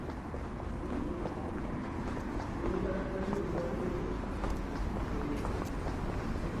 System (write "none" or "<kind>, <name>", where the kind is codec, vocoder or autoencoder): none